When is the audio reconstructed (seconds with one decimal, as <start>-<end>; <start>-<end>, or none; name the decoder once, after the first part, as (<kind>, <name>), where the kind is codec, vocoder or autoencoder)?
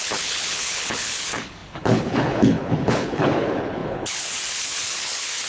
0.0-5.5 (codec, HILCodec)